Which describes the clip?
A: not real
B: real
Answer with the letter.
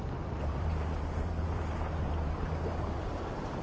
A